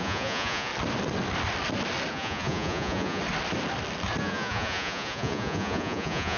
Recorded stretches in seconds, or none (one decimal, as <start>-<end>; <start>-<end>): 0.7-2.1; 3.2-4.2